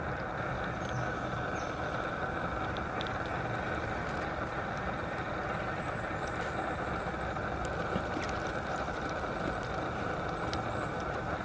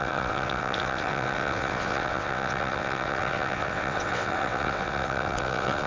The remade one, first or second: second